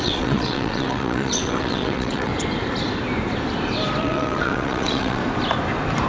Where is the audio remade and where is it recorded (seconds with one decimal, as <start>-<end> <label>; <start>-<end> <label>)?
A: 0.0-2.3 remade; 2.3-4.0 recorded; 4.0-5.2 remade; 5.2-6.1 recorded

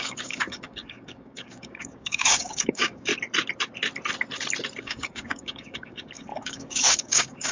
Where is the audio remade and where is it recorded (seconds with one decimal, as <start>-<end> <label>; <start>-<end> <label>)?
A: 0.0-3.1 remade; 3.1-4.8 recorded; 4.8-7.5 remade